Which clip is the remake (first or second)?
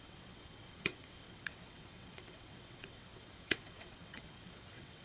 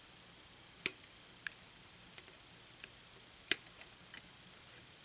first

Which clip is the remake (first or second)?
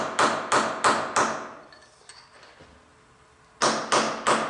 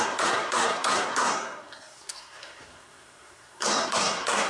second